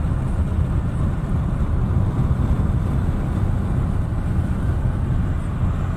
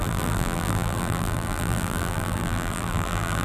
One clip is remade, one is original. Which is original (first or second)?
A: first